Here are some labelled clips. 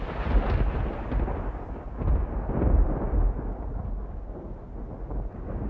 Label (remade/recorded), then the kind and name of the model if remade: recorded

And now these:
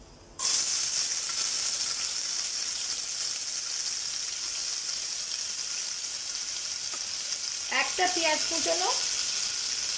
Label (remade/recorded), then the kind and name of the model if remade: recorded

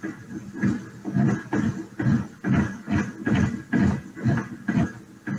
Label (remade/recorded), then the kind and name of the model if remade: recorded